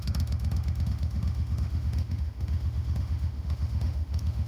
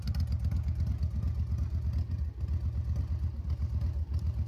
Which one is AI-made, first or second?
first